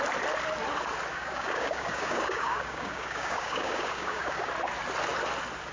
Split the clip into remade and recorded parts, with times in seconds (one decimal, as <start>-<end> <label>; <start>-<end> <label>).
0.0-1.1 recorded; 1.1-4.5 remade; 4.5-5.7 recorded